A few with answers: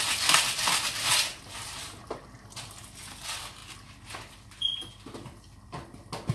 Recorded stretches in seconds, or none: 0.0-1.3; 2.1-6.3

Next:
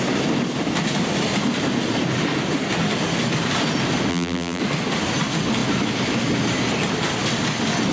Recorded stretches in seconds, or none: 0.0-4.1; 4.6-7.9

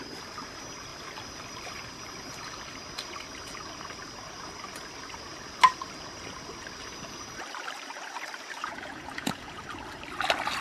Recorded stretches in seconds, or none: 0.0-8.6; 9.6-10.6

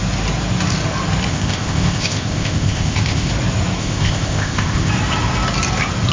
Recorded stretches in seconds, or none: 0.0-1.3; 3.3-3.8; 4.9-6.1